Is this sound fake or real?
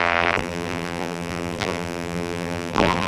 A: fake